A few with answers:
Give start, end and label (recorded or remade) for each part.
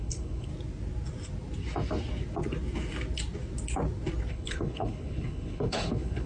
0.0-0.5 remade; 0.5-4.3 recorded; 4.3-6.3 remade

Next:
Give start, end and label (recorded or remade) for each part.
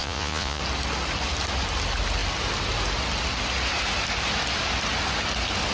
0.0-0.6 remade; 0.6-5.7 recorded